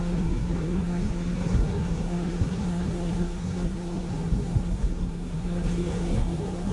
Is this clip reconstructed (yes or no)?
yes